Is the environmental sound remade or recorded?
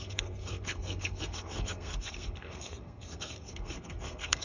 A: remade